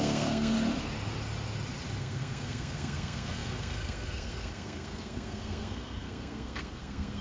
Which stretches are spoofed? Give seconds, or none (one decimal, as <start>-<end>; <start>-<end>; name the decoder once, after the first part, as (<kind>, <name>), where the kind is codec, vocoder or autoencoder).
0.0-0.5 (codec, SNAC); 2.0-7.2